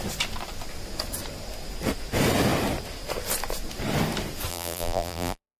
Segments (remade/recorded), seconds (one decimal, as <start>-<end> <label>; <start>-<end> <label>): 0.0-4.5 recorded; 4.5-5.6 remade